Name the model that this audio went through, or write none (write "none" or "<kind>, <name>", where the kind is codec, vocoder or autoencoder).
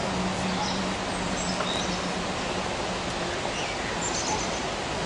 none